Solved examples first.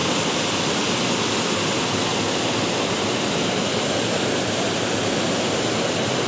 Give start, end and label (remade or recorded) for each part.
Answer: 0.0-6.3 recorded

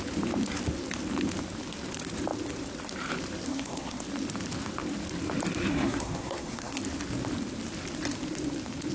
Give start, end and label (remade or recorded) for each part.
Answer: 0.0-3.5 recorded; 3.5-4.0 remade; 4.0-5.7 recorded; 5.7-6.8 remade; 6.8-8.9 recorded

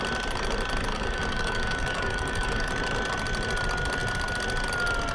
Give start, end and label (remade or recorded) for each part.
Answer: 0.0-0.9 recorded; 0.9-2.7 remade; 2.7-5.1 recorded